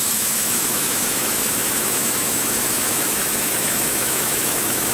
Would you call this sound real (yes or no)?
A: no